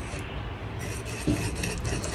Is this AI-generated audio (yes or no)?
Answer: no